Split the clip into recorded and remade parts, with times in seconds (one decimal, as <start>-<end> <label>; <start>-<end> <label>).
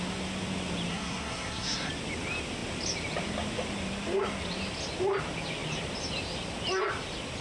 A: 0.0-0.9 recorded; 0.9-1.9 remade; 1.9-7.4 recorded